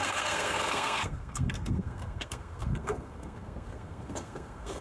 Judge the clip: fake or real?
fake